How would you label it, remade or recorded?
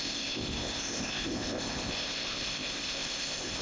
remade